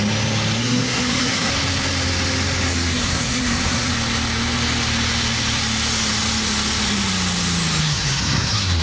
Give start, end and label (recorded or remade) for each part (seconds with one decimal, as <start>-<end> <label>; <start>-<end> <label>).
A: 0.0-0.6 recorded; 0.6-1.5 remade; 1.5-2.7 recorded; 2.7-3.9 remade; 3.9-7.8 recorded; 7.8-8.8 remade